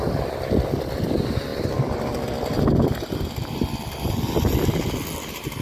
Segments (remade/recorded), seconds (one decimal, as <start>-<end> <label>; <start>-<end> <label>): 0.0-5.6 recorded